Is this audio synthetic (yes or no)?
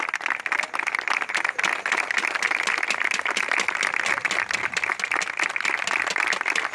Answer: no